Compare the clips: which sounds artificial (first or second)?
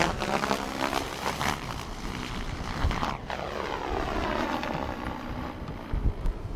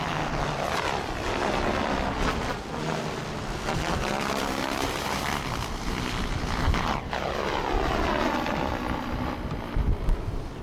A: first